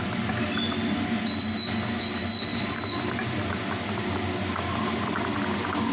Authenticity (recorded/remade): recorded